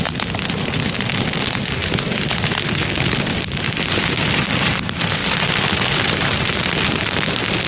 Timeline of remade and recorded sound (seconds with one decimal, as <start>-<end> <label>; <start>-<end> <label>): 0.0-7.7 recorded